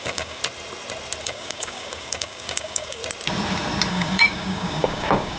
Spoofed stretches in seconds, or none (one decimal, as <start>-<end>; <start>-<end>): 0.0-0.4; 1.2-3.0; 3.9-5.4